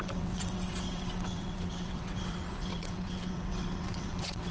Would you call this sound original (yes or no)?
no